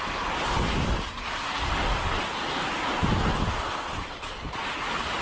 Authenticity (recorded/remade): recorded